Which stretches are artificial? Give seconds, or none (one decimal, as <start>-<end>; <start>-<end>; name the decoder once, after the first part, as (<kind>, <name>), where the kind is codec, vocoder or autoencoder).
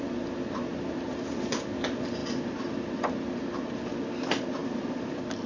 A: 0.7-1.2 (vocoder, BigVGAN v2); 2.2-3.1; 4.6-5.5